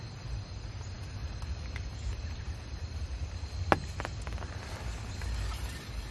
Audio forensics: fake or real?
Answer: real